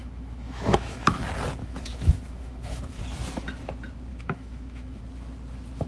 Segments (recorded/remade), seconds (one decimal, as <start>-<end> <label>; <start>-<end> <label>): 0.0-1.2 remade; 1.2-1.6 recorded; 1.6-3.0 remade; 3.0-4.1 recorded; 4.1-5.0 remade; 5.0-5.9 recorded